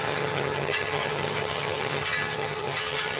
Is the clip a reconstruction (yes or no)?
yes